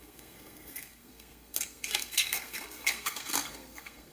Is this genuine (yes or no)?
no